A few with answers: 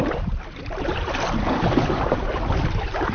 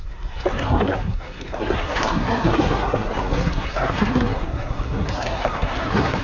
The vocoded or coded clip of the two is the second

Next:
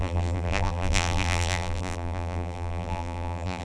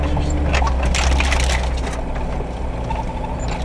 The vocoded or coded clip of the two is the first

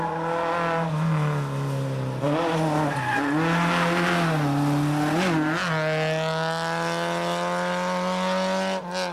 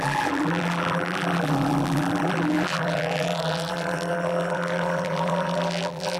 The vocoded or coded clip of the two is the second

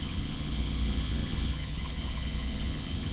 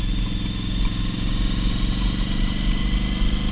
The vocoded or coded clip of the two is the first